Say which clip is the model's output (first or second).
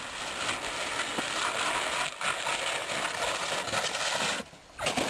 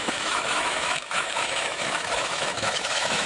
second